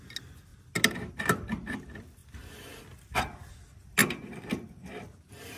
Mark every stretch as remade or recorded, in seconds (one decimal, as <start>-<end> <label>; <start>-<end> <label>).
0.0-5.6 recorded